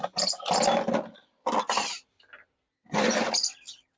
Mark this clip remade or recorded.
recorded